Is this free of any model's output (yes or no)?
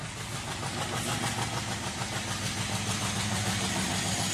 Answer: yes